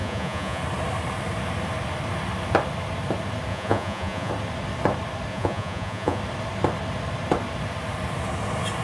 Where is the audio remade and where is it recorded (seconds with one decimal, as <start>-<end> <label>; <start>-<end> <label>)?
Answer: 0.0-0.6 remade; 0.6-3.5 recorded; 3.5-4.3 remade; 4.3-5.3 recorded; 5.3-6.2 remade; 6.2-8.8 recorded

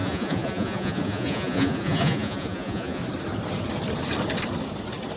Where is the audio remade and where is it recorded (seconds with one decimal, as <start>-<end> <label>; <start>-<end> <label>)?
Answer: 0.0-3.0 remade; 3.0-5.2 recorded

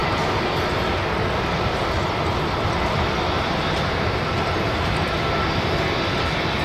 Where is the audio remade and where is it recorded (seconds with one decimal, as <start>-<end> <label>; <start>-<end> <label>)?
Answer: 0.0-6.6 recorded

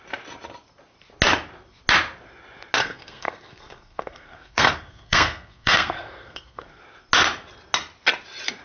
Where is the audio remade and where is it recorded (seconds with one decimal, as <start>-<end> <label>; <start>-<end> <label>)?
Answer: 0.0-2.8 recorded; 2.8-6.8 remade; 6.8-8.6 recorded

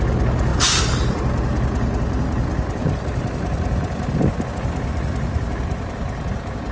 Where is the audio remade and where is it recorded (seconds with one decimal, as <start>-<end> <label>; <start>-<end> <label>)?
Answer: 0.0-4.9 recorded; 4.9-5.5 remade; 5.5-6.7 recorded

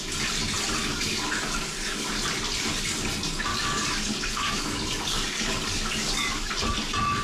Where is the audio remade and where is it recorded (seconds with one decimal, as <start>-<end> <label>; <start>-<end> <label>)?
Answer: 0.0-0.8 recorded; 0.8-2.2 remade; 2.2-3.5 recorded; 3.5-6.5 remade; 6.5-7.2 recorded

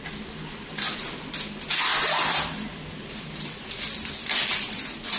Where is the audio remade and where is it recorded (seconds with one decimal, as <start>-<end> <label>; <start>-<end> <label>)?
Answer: 0.0-1.9 recorded; 1.9-5.2 remade